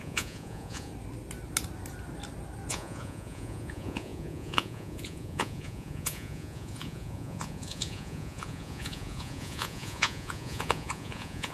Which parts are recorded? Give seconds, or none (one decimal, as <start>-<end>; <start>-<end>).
0.9-2.7